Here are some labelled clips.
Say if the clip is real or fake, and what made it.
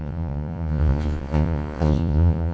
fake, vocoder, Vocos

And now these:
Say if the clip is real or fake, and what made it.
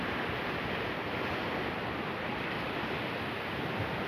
real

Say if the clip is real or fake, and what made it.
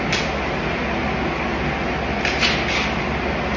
real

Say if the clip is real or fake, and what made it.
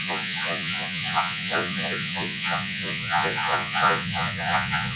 fake, vocoder, Vocos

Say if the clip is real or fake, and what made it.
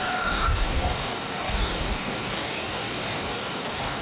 fake, codec, DAC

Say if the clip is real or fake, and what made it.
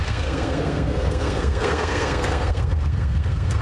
fake, codec, SNAC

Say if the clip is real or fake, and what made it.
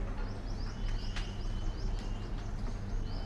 real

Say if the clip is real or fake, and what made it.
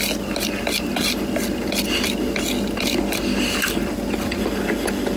real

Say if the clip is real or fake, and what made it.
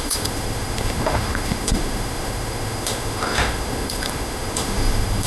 fake, autoencoder, DAC-VAE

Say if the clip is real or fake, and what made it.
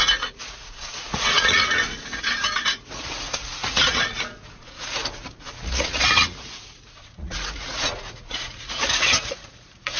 fake, vocoder, Vocos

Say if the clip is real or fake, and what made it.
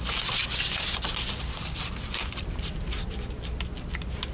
real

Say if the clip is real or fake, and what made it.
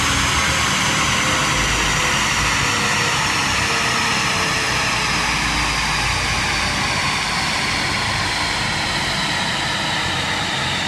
real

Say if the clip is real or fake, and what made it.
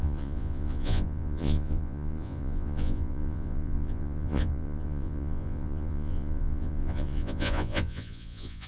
fake, vocoder, Vocos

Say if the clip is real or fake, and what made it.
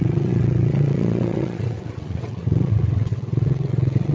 fake, vocoder, WaveNeXt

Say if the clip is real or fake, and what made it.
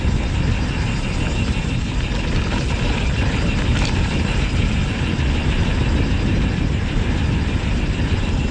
real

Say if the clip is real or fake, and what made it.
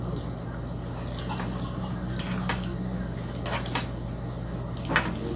real